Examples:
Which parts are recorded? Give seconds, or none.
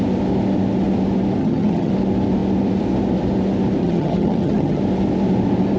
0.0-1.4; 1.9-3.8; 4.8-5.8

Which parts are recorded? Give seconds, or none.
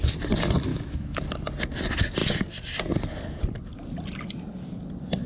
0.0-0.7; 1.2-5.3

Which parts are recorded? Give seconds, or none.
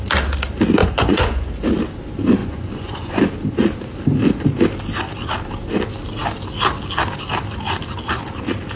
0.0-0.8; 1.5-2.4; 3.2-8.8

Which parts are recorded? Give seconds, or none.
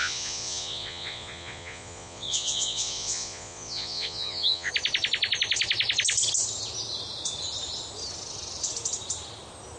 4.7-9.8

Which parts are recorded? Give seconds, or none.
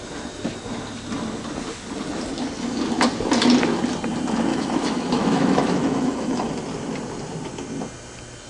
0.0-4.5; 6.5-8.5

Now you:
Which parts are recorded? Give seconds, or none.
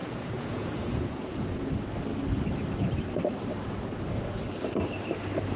1.7-5.6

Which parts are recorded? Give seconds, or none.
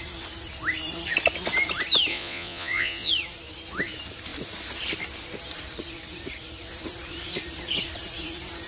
0.0-2.1; 3.1-8.7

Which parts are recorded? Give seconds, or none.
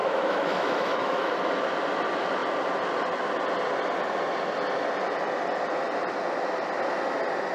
1.3-7.5